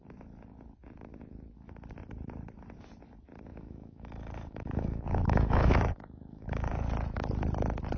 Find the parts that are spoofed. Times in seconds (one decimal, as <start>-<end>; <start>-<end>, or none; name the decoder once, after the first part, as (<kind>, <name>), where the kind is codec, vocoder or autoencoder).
3.5-6.7 (autoencoder, DAC-VAE)